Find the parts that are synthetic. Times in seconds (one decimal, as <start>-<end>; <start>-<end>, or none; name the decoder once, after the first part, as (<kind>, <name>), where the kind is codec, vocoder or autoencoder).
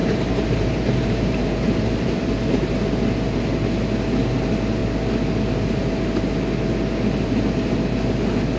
0.0-2.3 (vocoder, BigVGAN v2)